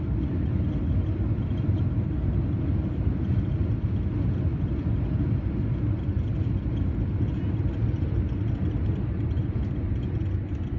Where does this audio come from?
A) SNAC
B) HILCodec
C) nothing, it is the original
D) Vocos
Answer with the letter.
C